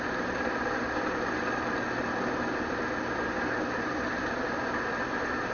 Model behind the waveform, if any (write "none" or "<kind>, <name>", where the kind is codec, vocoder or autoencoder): none